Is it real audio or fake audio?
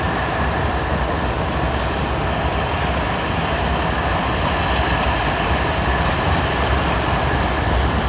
real